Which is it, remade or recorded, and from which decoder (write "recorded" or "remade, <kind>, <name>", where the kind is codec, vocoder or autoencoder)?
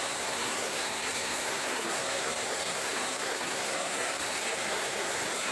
remade, codec, SNAC